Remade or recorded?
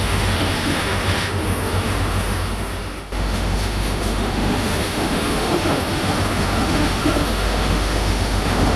remade